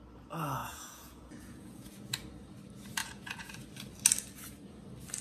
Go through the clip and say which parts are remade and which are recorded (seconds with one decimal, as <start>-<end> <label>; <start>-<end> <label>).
0.0-0.6 recorded; 0.6-2.0 remade; 2.0-3.0 recorded; 3.0-3.5 remade; 3.5-5.2 recorded